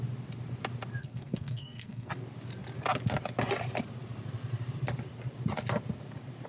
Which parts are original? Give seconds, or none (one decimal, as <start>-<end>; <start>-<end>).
0.0-1.0; 2.1-6.5